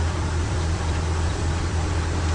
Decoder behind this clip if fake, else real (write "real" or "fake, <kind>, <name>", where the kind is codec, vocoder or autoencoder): fake, vocoder, BigVGAN v2